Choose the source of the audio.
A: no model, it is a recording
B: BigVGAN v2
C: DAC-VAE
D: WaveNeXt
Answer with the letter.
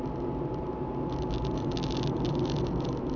A